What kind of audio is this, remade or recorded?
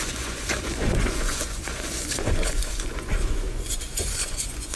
remade